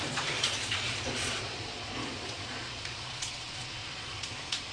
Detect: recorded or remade remade